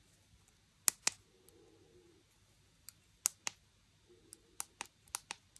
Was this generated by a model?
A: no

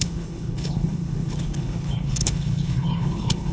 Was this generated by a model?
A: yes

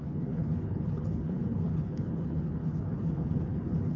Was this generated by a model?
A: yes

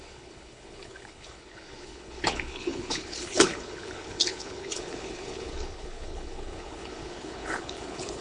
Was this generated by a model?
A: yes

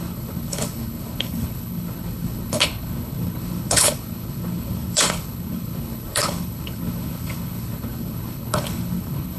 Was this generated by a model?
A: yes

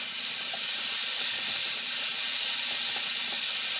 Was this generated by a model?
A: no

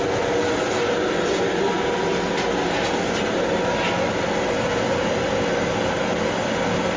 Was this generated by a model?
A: no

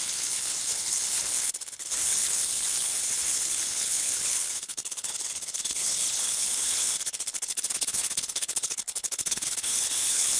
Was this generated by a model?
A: yes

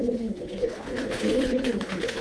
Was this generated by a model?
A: yes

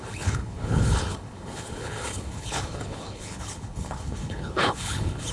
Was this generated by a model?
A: yes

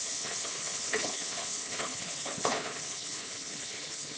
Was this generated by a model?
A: yes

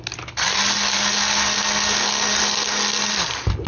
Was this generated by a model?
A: no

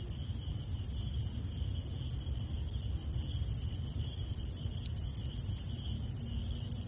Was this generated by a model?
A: no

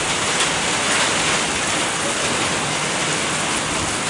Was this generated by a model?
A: no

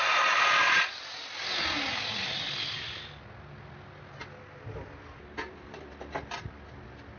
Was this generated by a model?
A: no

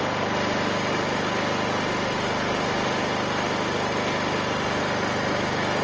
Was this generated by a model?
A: no